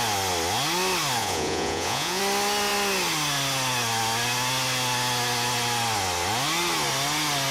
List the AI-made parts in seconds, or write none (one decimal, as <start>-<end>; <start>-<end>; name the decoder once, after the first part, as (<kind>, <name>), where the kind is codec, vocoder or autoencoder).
1.2-2.2 (vocoder, Vocos)